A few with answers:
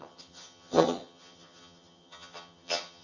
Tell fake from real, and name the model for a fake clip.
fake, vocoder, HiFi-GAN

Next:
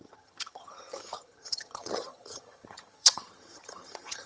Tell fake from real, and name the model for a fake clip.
fake, vocoder, HiFi-GAN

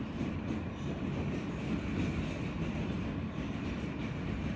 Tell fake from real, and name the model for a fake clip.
real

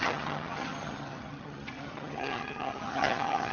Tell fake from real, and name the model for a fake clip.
fake, vocoder, HiFi-GAN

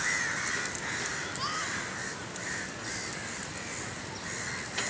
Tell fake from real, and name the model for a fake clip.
real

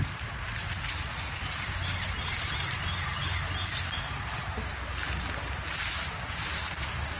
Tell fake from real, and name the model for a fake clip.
real